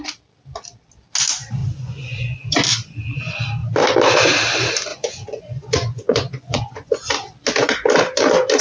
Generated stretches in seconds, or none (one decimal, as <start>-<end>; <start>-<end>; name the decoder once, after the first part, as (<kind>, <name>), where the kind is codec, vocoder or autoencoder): 1.6-2.5 (vocoder, Vocos); 4.9-6.9